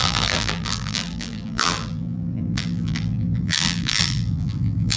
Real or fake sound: fake